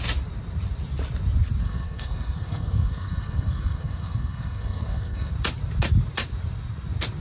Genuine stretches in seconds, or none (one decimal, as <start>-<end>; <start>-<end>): 0.0-1.6; 5.3-7.2